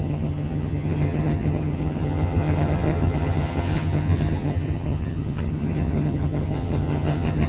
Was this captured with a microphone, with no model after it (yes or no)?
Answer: no